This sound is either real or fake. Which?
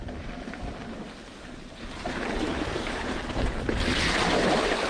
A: real